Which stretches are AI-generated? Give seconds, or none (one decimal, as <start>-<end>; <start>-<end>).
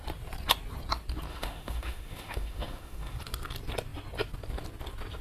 1.3-3.2